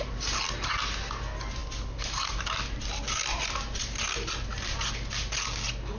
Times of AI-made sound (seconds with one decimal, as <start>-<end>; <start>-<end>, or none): none